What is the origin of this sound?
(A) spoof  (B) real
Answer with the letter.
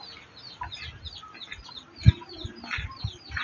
B